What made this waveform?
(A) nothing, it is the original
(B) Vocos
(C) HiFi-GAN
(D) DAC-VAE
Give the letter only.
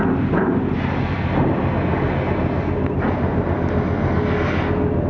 A